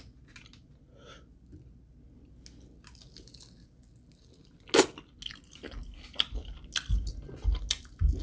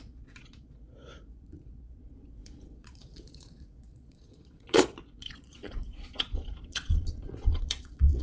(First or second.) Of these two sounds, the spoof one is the second